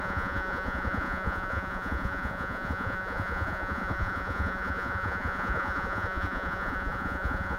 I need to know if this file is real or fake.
fake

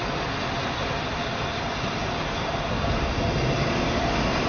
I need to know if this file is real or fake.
real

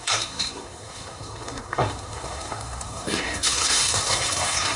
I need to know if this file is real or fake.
fake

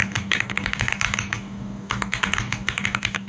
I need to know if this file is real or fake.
fake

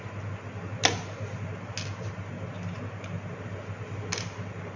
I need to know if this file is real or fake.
real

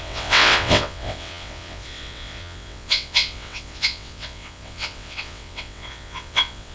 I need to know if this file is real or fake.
fake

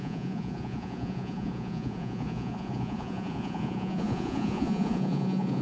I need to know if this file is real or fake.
fake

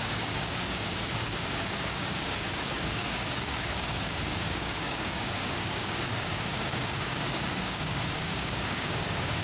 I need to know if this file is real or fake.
fake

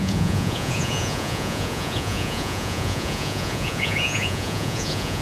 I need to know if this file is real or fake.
fake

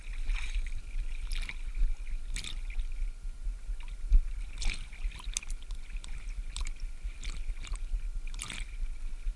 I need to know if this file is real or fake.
real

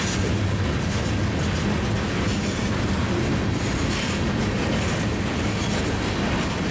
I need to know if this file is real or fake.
real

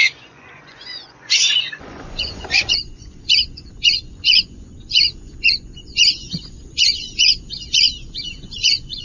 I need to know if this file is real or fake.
fake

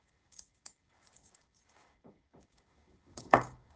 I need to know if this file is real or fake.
fake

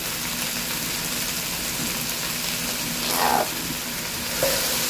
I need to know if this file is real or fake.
real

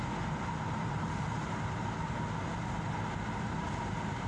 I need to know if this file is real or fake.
real